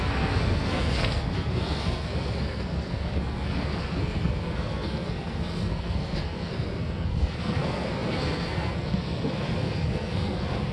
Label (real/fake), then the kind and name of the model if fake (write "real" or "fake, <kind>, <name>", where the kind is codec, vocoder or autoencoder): fake, codec, SNAC